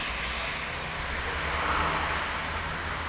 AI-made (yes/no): no